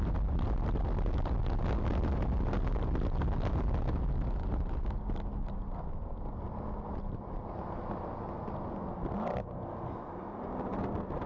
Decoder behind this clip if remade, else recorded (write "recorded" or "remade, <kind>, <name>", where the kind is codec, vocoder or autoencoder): recorded